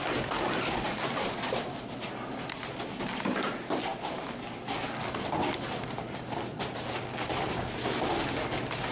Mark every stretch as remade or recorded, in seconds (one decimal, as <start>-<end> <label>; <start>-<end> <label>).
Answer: 0.0-8.9 recorded